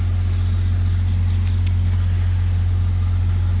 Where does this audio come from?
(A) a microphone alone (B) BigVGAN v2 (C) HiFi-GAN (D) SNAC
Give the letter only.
A